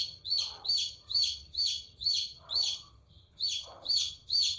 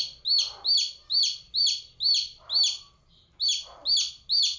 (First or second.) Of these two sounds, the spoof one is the first